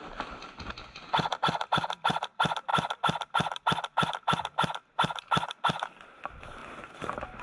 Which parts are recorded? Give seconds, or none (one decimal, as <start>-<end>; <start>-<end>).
0.0-7.4